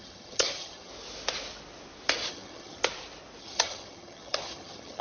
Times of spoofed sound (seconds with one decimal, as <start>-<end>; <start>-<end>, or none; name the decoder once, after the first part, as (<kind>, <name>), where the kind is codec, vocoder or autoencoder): 0.0-0.9 (vocoder, HiFi-GAN); 2.3-2.8; 3.4-5.0